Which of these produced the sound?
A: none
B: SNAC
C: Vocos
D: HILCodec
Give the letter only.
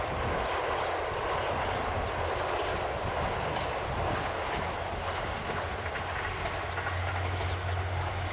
A